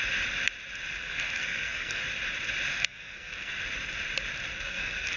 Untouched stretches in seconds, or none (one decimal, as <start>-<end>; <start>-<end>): 0.0-1.0; 2.0-2.7; 3.6-4.5